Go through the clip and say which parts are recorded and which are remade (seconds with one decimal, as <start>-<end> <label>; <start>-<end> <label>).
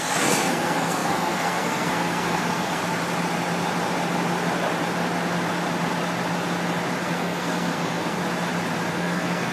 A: 0.0-2.8 remade; 2.8-7.0 recorded; 7.0-8.2 remade; 8.2-8.9 recorded; 8.9-9.5 remade